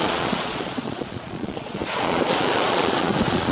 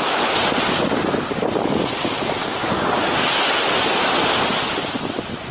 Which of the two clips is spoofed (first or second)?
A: first